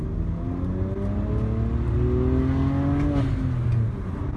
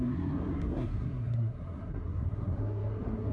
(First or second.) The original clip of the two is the first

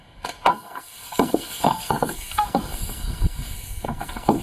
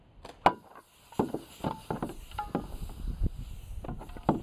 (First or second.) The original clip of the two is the second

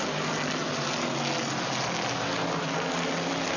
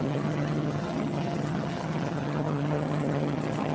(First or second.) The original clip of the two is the first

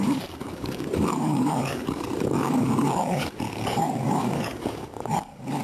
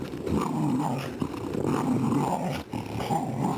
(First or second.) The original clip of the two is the second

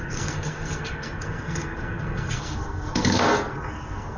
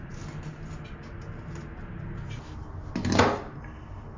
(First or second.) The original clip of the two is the second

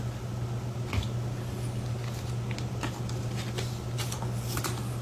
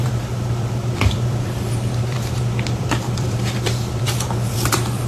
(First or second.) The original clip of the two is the first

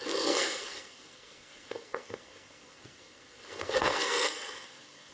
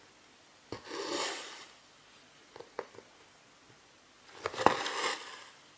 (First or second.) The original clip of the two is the second